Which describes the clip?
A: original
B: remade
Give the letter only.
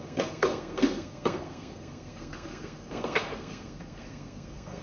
B